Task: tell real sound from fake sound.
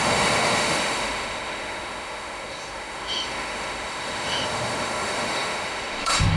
fake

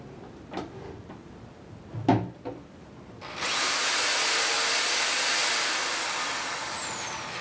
real